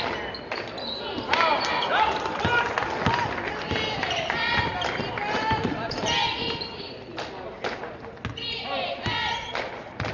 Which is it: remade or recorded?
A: recorded